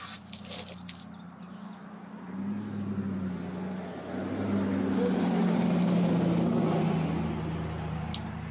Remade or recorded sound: recorded